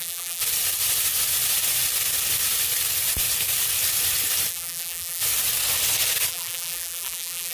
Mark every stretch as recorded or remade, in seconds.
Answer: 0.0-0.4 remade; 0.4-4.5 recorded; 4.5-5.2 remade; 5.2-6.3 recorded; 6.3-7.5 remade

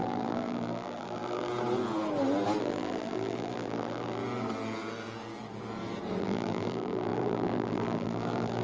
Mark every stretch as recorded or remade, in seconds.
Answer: 0.0-1.5 remade; 1.5-2.6 recorded; 2.6-4.2 remade; 4.2-6.2 recorded; 6.2-8.6 remade

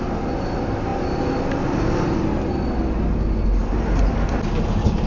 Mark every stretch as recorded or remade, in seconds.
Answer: 0.0-5.1 recorded

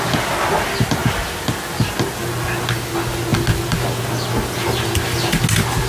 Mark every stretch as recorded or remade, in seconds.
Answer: 0.0-5.9 recorded

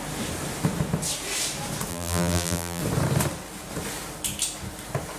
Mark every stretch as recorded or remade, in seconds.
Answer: 0.0-1.9 recorded; 1.9-2.8 remade; 2.8-5.2 recorded

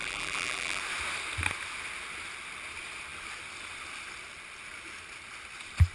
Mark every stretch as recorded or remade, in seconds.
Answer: 0.0-0.8 remade; 0.8-5.9 recorded

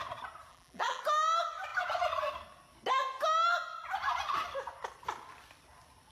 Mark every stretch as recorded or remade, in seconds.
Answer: 0.0-0.5 recorded; 0.5-1.0 remade; 1.0-6.1 recorded

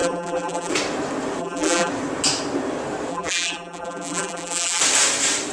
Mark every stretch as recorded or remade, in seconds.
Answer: 0.0-0.7 remade; 0.7-1.4 recorded; 1.4-1.9 remade; 1.9-3.1 recorded; 3.1-4.8 remade; 4.8-5.5 recorded